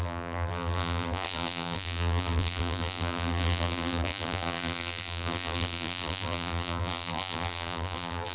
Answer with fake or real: fake